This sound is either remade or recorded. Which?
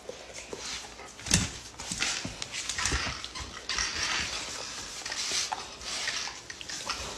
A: recorded